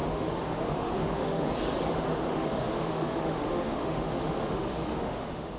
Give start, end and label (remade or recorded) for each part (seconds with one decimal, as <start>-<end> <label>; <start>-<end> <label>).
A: 0.0-1.5 remade; 1.5-1.9 recorded; 1.9-5.6 remade

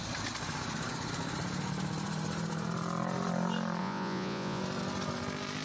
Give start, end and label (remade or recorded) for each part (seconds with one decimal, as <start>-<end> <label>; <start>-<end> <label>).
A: 0.0-3.8 recorded; 3.8-4.6 remade; 4.6-5.6 recorded

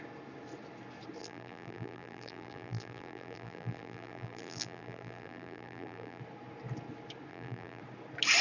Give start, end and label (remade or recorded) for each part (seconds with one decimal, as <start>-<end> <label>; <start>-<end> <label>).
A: 0.0-1.2 recorded; 1.2-6.2 remade; 6.2-7.3 recorded; 7.3-7.8 remade; 7.8-8.4 recorded

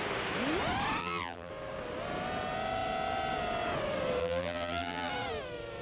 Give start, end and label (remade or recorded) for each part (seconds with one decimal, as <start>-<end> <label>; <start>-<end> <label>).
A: 0.0-1.0 recorded; 1.0-1.5 remade; 1.5-4.2 recorded; 4.2-5.1 remade; 5.1-5.8 recorded

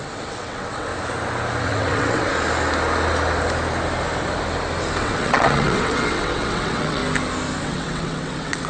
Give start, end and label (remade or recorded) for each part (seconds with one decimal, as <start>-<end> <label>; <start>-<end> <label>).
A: 0.0-0.9 remade; 0.9-1.6 recorded; 1.6-2.3 remade; 2.3-5.0 recorded; 5.0-7.0 remade; 7.0-7.6 recorded; 7.6-8.7 remade

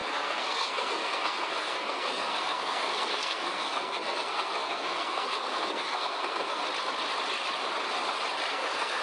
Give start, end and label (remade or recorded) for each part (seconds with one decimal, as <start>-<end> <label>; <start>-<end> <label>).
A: 0.0-6.6 remade; 6.6-8.5 recorded; 8.5-9.0 remade

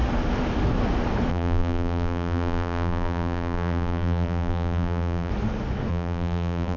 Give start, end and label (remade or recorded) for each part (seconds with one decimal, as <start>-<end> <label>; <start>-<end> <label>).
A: 0.0-1.3 recorded; 1.3-5.3 remade; 5.3-5.9 recorded; 5.9-6.8 remade

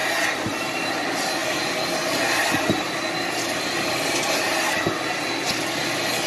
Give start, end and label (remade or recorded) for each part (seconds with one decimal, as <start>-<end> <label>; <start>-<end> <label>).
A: 0.0-6.3 recorded